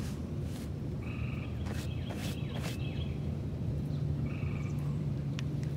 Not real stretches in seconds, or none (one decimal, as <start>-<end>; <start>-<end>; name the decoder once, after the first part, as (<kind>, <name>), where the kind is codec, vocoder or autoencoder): 2.2-5.8 (vocoder, BigVGAN v2)